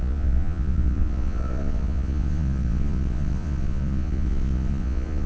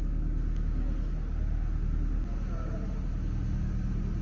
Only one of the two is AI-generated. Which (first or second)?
first